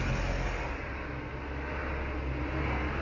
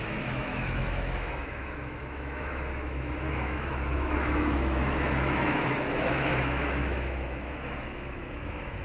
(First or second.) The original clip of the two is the first